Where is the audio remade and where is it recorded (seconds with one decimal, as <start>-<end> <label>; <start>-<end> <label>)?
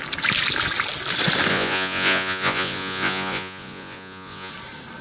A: 0.0-1.5 recorded; 1.5-4.5 remade; 4.5-5.0 recorded